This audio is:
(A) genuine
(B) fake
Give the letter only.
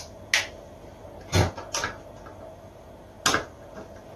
A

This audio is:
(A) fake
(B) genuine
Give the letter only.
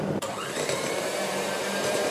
A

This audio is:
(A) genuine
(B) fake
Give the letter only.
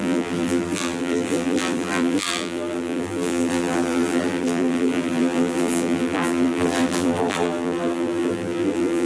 B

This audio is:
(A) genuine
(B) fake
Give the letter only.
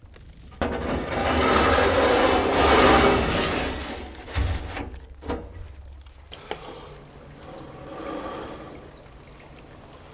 A